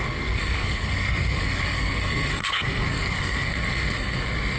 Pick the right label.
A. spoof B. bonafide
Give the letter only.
A